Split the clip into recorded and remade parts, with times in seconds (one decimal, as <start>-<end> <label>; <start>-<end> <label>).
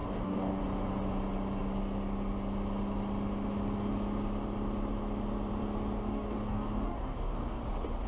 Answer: 0.0-0.6 remade; 0.6-6.0 recorded; 6.0-7.6 remade; 7.6-8.1 recorded